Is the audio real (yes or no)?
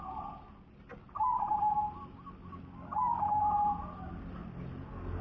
yes